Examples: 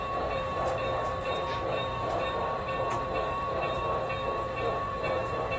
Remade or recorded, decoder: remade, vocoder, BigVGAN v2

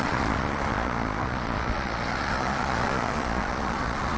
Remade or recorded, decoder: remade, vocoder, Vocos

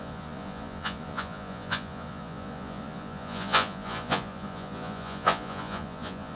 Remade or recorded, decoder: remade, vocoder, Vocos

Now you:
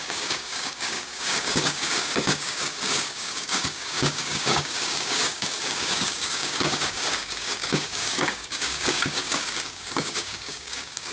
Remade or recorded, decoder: remade, codec, DAC